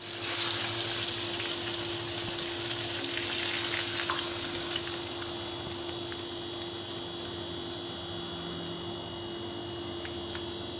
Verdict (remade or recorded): recorded